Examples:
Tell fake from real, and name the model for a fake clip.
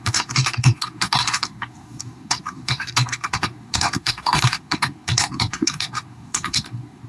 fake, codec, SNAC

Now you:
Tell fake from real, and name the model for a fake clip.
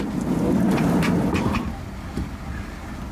real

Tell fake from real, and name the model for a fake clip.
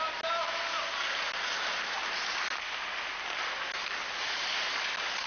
real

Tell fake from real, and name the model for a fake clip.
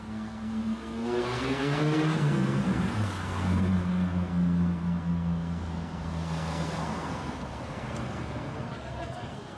fake, codec, SNAC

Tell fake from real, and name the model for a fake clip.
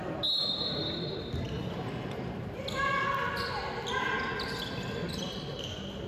real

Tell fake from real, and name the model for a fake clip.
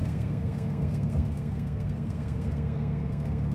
fake, codec, SNAC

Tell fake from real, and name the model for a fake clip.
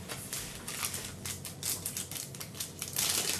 real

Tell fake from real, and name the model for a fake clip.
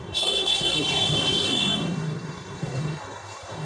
fake, codec, SNAC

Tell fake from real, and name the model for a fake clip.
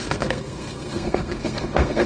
fake, codec, SNAC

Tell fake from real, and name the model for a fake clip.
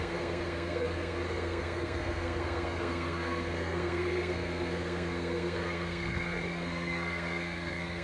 fake, codec, SNAC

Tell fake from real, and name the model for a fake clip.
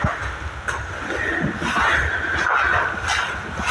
real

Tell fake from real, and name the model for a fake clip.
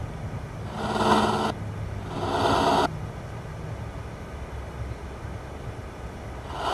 real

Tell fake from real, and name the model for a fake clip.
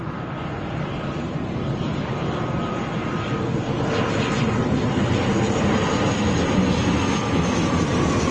real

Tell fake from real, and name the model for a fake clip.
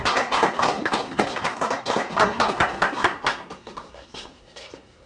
fake, codec, SNAC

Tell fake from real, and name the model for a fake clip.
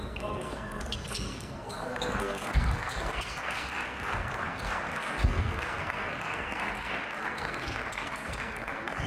fake, codec, SNAC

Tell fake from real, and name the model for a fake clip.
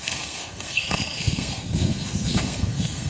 fake, codec, SNAC